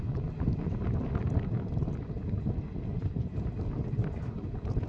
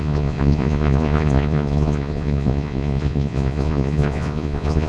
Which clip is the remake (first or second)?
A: second